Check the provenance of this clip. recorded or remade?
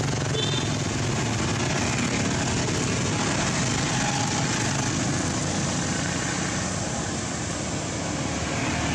recorded